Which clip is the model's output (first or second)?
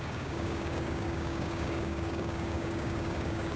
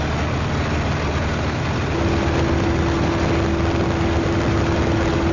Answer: first